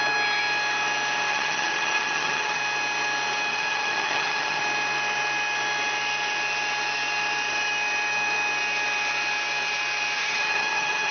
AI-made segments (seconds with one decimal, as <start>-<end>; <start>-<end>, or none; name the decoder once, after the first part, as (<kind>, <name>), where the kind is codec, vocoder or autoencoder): 1.3-2.6 (vocoder, HiFi-GAN); 3.5-4.6; 10.2-11.1